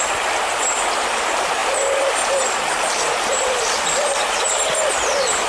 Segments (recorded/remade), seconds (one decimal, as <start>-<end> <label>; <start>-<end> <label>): 0.0-5.5 recorded

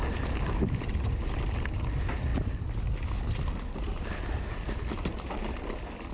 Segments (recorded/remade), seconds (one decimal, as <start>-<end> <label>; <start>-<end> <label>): 0.0-6.1 recorded